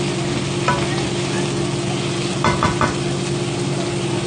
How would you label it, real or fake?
real